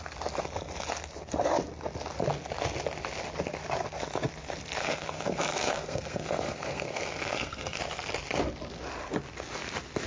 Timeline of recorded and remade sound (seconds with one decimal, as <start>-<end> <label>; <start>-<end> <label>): 0.0-4.8 recorded; 4.8-7.8 remade; 7.8-10.1 recorded